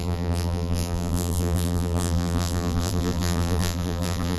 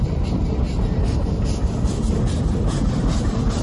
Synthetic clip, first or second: first